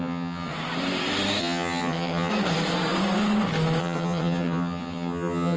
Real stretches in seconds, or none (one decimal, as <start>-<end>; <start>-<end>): 0.5-1.4; 2.3-3.8